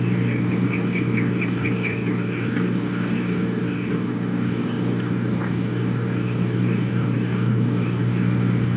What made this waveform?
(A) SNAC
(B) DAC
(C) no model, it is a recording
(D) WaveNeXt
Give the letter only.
B